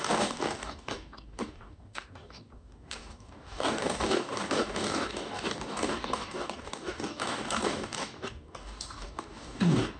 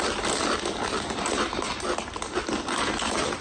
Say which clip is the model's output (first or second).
first